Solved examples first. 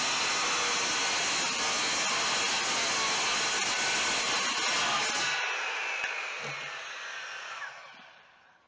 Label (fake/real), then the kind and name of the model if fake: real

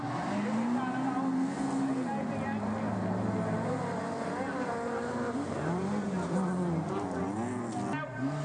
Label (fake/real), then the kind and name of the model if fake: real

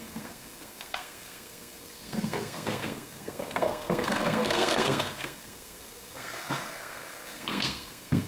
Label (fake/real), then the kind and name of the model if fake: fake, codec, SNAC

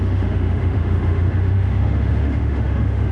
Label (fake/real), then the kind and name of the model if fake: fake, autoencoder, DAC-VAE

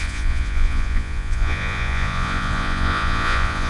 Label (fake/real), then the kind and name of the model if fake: fake, vocoder, Vocos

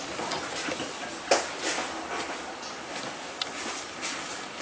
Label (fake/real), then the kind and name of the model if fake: real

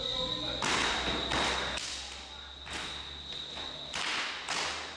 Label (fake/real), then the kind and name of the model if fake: real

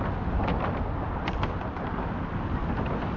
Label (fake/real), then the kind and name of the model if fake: fake, vocoder, BigVGAN v2